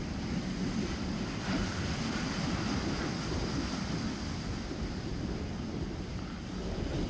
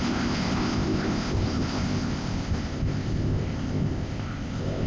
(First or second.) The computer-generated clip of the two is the second